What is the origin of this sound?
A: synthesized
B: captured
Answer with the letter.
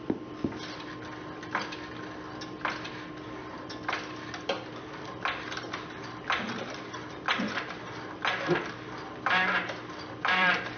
A